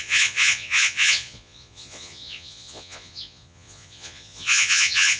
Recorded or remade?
remade